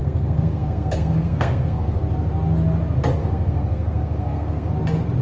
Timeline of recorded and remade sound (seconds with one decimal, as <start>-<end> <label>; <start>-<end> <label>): 0.0-2.0 remade; 2.0-3.2 recorded; 3.2-4.7 remade; 4.7-5.2 recorded